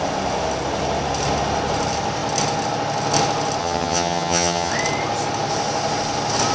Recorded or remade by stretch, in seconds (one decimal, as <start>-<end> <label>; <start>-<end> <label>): 0.0-3.6 recorded; 3.6-4.7 remade; 4.7-6.5 recorded